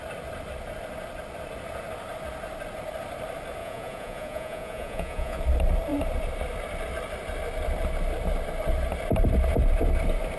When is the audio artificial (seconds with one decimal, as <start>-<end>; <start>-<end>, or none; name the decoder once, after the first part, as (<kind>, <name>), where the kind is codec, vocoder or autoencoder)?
3.6-5.4 (vocoder, Vocos)